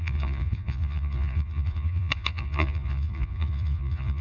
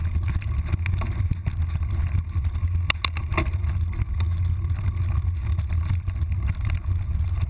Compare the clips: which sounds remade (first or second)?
first